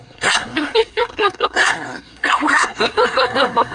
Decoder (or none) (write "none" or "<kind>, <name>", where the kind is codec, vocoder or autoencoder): codec, SNAC